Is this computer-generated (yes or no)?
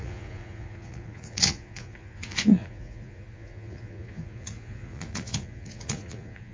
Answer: yes